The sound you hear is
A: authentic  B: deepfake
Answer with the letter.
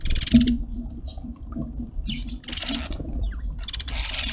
B